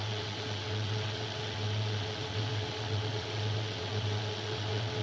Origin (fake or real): fake